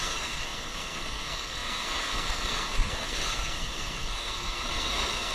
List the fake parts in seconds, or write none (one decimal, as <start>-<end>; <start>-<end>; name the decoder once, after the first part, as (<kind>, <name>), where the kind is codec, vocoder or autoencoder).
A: 0.0-5.3 (codec, SNAC)